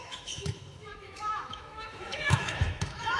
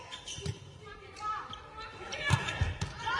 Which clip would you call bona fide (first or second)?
second